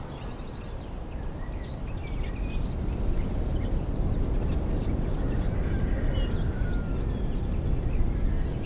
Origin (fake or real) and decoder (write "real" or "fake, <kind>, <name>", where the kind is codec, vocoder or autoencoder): real